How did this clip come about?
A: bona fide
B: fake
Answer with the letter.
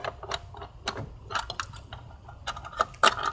A